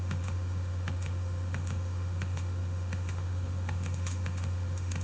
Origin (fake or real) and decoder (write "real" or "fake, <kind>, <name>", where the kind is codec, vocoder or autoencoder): fake, autoencoder, DAC-VAE